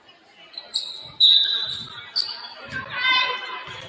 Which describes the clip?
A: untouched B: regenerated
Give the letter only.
A